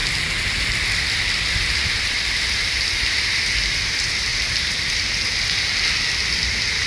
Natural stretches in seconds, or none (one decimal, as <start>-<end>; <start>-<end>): 0.0-1.8; 3.6-4.3; 4.9-6.9